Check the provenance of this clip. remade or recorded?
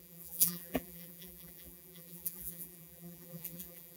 remade